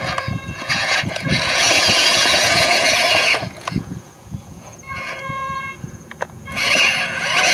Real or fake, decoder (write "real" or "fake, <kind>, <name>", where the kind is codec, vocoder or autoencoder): fake, vocoder, Vocos